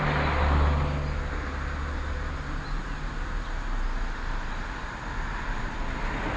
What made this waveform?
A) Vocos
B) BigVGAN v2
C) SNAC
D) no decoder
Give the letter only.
D